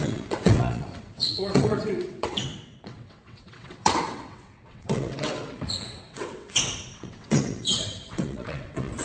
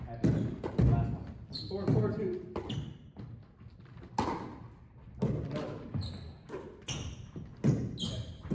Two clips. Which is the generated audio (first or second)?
first